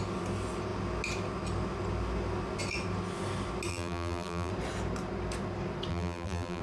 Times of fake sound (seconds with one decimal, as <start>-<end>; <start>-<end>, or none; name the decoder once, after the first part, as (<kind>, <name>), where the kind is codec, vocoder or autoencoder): 3.7-4.5 (vocoder, BigVGAN v2); 5.9-6.6